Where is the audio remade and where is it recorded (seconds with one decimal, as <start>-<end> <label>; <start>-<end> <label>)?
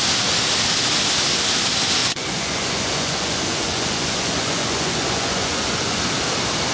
0.0-2.0 recorded; 2.0-6.0 remade; 6.0-6.7 recorded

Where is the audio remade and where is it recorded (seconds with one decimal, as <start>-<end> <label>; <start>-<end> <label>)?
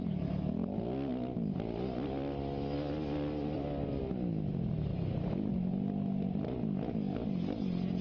0.0-8.0 recorded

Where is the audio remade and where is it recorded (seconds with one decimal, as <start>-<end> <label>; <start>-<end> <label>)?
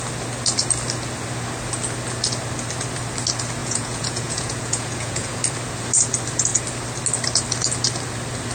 0.0-3.6 recorded; 3.6-5.4 remade; 5.4-8.5 recorded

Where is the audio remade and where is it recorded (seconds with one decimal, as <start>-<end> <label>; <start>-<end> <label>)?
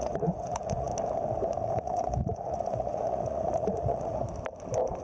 0.0-0.9 remade; 0.9-1.7 recorded; 1.7-4.2 remade; 4.2-5.0 recorded